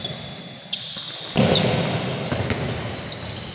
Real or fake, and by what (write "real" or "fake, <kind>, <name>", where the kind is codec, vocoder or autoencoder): real